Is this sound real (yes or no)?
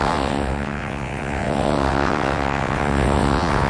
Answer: no